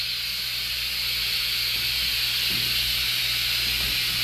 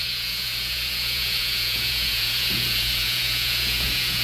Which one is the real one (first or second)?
first